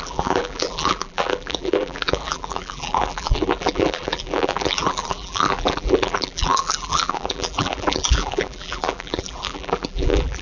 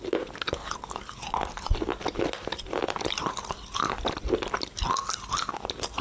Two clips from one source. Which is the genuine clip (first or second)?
second